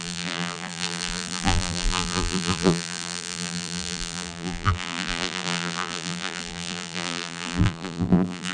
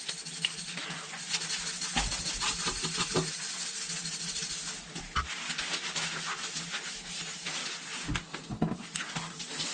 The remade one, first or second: first